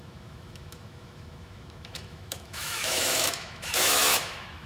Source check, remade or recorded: remade